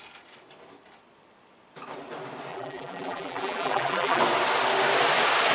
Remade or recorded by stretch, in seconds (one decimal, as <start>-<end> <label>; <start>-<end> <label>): 0.0-2.5 recorded; 2.5-4.2 remade; 4.2-5.5 recorded